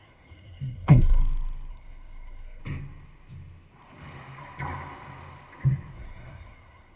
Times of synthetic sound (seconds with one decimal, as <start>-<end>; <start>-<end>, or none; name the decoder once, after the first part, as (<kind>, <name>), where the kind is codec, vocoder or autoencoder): 0.0-1.2 (codec, SNAC); 1.7-2.6; 5.9-7.0